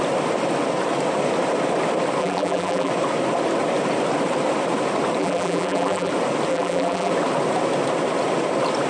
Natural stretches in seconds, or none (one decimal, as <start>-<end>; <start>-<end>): 0.0-2.2; 2.9-5.2; 6.1-6.5; 7.1-8.9